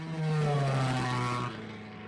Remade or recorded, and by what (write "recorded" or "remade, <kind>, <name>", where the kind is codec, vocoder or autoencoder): recorded